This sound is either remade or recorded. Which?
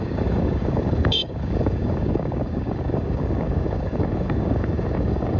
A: remade